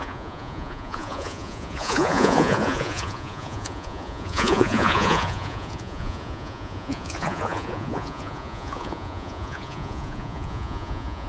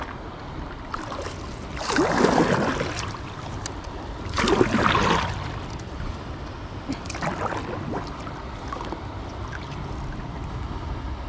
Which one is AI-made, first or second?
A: first